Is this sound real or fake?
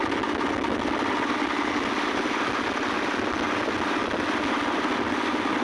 real